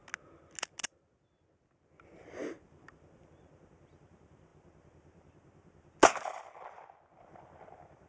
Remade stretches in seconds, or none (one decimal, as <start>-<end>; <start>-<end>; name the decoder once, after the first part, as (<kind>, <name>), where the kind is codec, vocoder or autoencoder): none

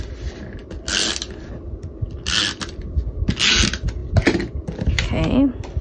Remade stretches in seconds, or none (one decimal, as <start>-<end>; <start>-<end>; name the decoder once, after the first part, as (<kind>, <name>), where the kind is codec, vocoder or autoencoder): none